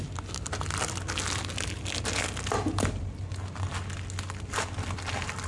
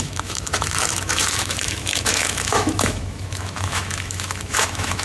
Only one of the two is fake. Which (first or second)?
second